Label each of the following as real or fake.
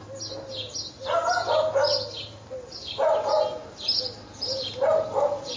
real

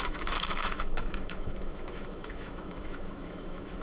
fake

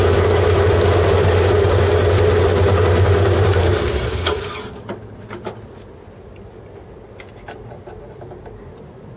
real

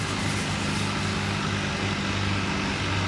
real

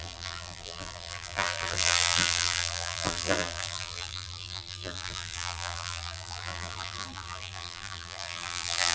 fake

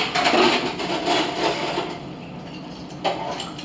real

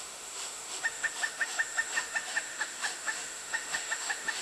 fake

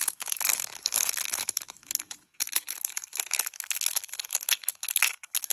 fake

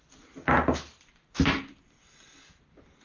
real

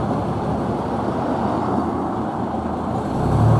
real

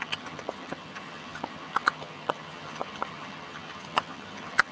fake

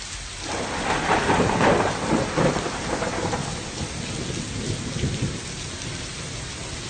real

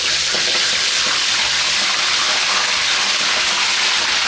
real